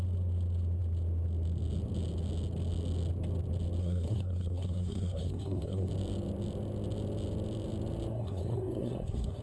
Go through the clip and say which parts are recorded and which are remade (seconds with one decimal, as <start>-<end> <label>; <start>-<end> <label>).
0.0-3.8 recorded; 3.8-5.9 remade; 5.9-8.1 recorded; 8.1-9.4 remade